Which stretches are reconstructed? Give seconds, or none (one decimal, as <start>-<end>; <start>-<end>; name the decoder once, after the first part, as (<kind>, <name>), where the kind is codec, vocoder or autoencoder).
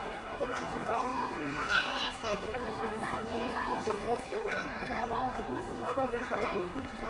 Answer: 0.0-7.1 (codec, SNAC)